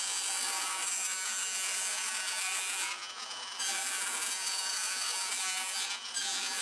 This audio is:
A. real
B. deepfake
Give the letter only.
B